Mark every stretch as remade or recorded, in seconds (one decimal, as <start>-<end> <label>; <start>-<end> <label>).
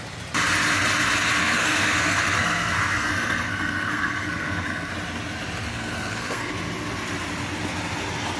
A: 0.0-1.4 recorded; 1.4-4.9 remade; 4.9-5.7 recorded; 5.7-6.5 remade; 6.5-8.4 recorded